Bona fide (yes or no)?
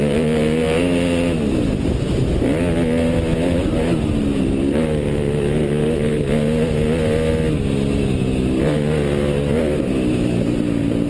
yes